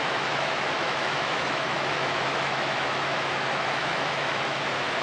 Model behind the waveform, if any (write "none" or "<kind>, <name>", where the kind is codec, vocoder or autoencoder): autoencoder, DAC-VAE